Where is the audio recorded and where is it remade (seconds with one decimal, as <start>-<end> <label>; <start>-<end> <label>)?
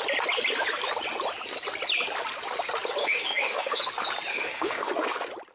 0.0-3.0 recorded; 3.0-3.8 remade; 3.8-4.3 recorded; 4.3-4.9 remade; 4.9-5.5 recorded